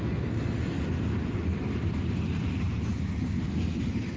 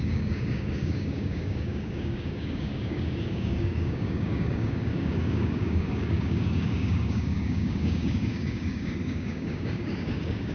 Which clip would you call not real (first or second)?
second